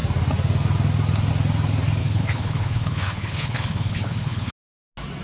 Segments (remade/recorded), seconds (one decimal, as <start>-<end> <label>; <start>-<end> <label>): 0.0-2.0 recorded; 2.0-4.5 remade; 4.5-5.2 recorded